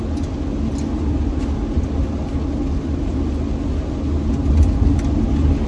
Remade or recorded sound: recorded